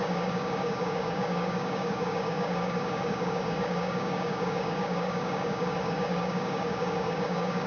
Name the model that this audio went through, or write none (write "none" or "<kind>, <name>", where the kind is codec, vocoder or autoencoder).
codec, DAC